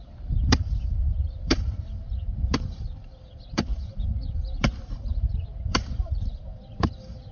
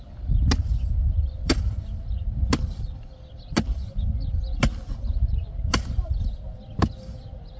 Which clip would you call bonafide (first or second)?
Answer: second